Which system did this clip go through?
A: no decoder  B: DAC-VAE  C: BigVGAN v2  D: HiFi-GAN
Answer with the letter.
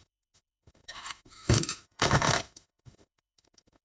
B